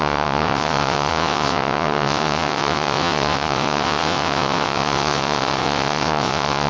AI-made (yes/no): yes